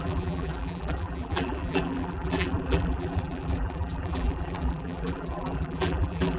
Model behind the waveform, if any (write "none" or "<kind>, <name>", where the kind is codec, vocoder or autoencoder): vocoder, BigVGAN v2